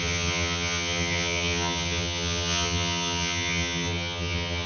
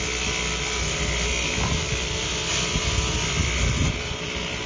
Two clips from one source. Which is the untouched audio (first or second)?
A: second